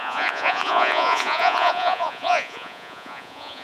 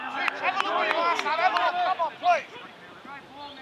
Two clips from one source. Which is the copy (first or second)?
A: first